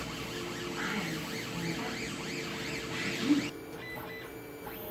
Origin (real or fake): real